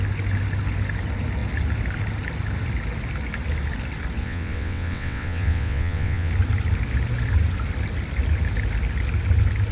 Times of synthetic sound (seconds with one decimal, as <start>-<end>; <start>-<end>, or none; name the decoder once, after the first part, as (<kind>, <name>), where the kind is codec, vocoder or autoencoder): 4.2-6.3 (vocoder, WaveNeXt)